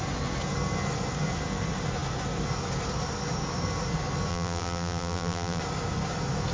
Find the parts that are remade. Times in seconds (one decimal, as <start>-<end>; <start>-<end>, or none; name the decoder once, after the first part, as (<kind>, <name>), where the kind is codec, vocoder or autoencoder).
4.3-5.6 (vocoder, BigVGAN v2)